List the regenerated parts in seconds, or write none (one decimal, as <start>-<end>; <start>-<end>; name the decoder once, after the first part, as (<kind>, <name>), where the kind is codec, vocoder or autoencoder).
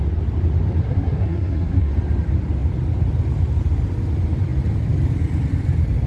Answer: 0.8-1.9 (codec, SNAC)